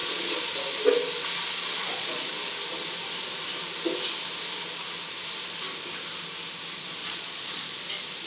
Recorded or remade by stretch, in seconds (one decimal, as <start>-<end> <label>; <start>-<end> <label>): 0.0-0.5 remade; 0.5-1.5 recorded; 1.5-2.3 remade; 2.3-7.0 recorded; 7.0-7.8 remade; 7.8-8.3 recorded